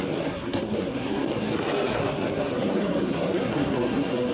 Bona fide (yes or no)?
no